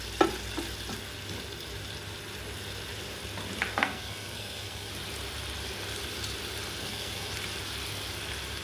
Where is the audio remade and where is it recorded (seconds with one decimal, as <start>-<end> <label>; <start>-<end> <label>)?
0.0-3.7 recorded; 3.7-4.9 remade; 4.9-6.8 recorded; 6.8-7.3 remade; 7.3-8.6 recorded